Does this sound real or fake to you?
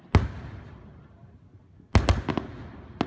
real